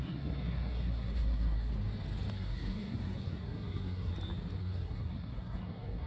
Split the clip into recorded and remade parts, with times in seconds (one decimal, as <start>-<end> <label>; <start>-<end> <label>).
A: 0.0-1.7 remade; 1.7-2.3 recorded; 2.3-4.1 remade; 4.1-4.6 recorded; 4.6-6.1 remade